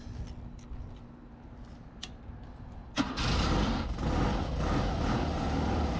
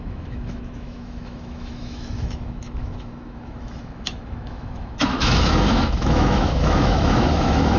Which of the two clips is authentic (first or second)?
first